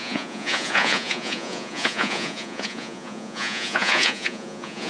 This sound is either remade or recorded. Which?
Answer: remade